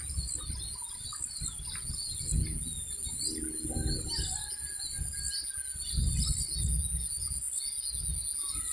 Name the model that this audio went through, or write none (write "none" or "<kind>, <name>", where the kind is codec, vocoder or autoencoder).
none